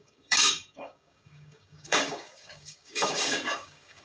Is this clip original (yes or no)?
no